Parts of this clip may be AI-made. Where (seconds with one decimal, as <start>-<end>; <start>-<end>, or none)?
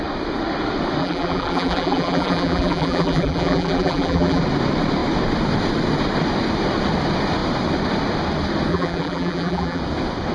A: 1.0-4.4; 8.7-9.8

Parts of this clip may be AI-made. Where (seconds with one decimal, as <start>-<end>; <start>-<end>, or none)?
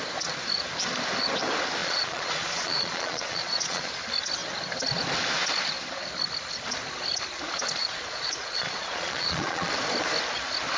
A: 1.8-3.9; 7.8-9.7